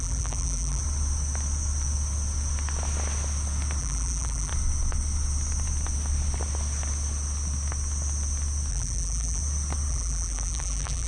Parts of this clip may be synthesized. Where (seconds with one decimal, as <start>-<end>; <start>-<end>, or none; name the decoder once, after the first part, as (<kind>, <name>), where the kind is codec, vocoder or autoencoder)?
0.0-0.8 (vocoder, BigVGAN v2); 3.8-4.5; 8.7-9.4; 9.9-11.1